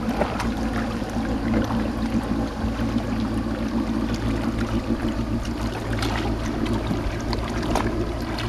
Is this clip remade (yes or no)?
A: no